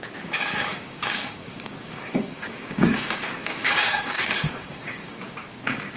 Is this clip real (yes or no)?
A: no